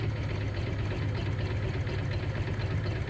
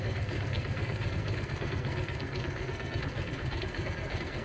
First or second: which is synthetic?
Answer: second